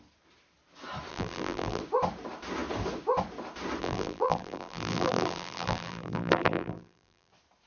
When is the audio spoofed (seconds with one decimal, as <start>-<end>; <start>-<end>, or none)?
1.1-1.8; 3.8-7.3